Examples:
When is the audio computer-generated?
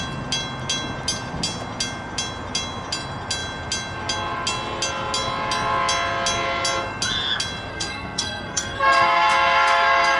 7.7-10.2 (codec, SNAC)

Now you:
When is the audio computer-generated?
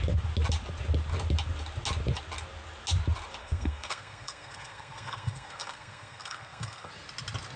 3.4-6.9 (codec, SNAC)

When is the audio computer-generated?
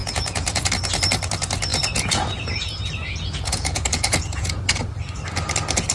0.0-0.7 (vocoder, Vocos); 1.7-4.9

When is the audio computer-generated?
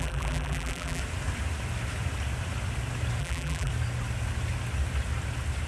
0.0-1.0 (vocoder, BigVGAN v2); 3.2-3.7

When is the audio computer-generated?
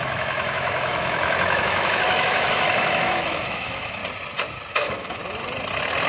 0.0-4.0 (autoencoder, DAC-VAE); 4.7-5.2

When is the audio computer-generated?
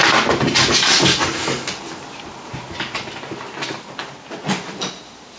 none